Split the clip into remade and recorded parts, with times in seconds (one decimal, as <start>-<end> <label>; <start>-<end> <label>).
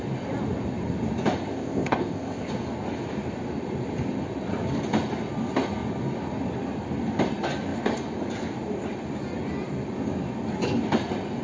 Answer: 0.0-1.5 recorded; 1.5-2.5 remade; 2.5-11.4 recorded